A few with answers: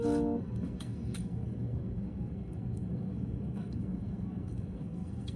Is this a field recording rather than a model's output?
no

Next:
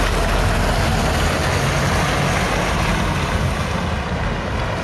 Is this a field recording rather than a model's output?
yes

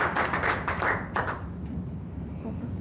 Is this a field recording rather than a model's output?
yes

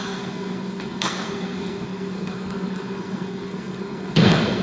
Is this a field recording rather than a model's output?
no